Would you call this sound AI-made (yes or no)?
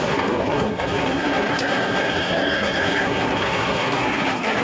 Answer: yes